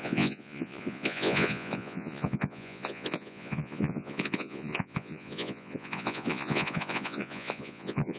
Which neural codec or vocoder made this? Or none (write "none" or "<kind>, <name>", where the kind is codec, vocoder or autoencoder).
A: vocoder, Vocos